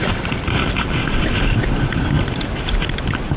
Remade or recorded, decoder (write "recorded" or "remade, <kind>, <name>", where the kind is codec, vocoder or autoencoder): recorded